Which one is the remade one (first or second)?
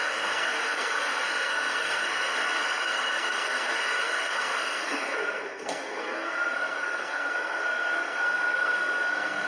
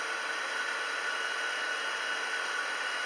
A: first